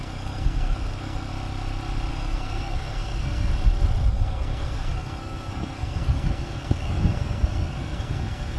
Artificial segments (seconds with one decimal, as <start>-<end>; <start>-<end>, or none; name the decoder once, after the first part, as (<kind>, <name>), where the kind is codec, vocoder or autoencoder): 0.0-1.3 (codec, SNAC); 2.1-3.5; 4.1-8.6